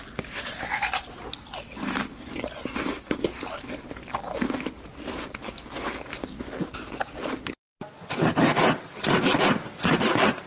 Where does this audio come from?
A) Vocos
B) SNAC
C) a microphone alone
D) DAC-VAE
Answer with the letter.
C